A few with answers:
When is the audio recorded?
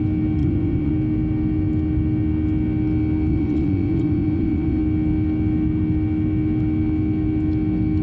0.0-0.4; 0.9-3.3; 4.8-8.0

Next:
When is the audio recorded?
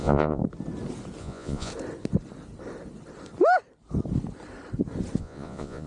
0.4-1.2; 1.7-5.2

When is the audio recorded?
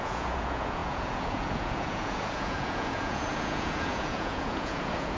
none